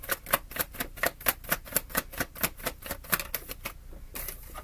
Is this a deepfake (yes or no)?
no